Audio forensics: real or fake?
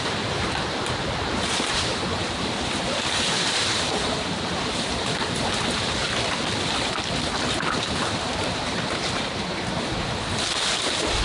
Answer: fake